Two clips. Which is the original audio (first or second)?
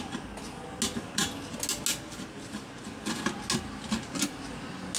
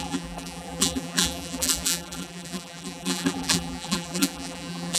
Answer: first